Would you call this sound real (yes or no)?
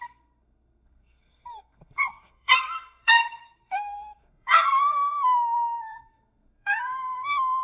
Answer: no